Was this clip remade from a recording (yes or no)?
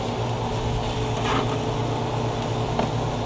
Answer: no